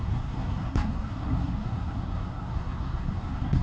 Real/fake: fake